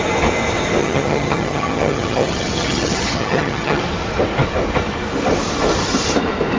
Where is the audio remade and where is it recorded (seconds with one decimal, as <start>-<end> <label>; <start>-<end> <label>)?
0.0-0.8 recorded; 0.8-3.8 remade; 3.8-6.6 recorded